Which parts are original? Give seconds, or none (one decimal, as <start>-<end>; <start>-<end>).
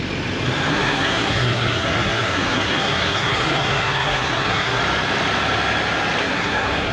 0.0-0.7; 4.8-6.2